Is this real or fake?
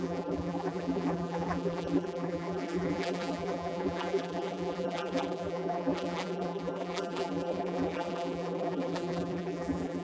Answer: fake